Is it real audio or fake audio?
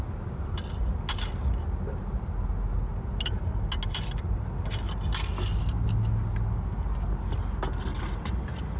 real